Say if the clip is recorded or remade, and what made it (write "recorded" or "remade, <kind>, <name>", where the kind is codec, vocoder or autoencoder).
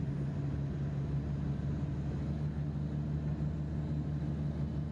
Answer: recorded